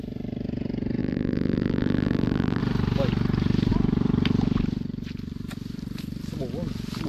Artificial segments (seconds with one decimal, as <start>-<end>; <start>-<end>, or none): 1.0-2.6

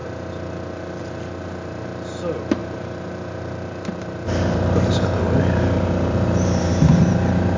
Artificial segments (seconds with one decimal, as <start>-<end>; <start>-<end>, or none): 2.6-7.6